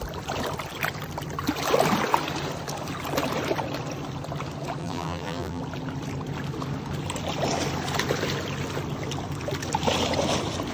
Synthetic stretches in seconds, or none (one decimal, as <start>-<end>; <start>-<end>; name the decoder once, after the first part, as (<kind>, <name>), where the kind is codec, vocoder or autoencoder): 4.8-5.6 (vocoder, BigVGAN v2)